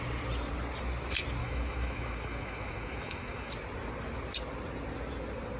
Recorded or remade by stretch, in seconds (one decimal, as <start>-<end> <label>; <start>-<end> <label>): 0.0-1.4 recorded; 1.4-3.5 remade; 3.5-5.6 recorded